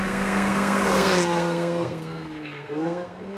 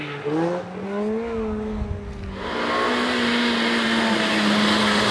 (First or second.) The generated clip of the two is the first